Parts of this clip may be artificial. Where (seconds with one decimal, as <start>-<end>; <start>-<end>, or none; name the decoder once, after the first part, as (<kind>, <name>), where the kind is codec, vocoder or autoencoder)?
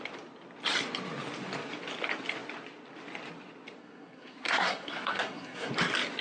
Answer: 3.8-5.7 (codec, SNAC)